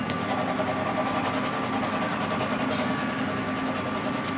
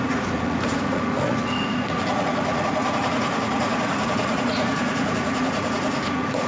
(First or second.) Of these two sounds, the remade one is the second